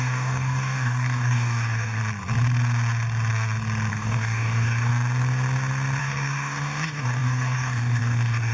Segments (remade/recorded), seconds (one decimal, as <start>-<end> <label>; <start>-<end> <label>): 0.0-2.0 remade; 2.0-3.9 recorded; 3.9-4.9 remade; 4.9-6.0 recorded; 6.0-8.5 remade